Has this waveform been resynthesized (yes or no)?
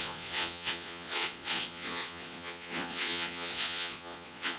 yes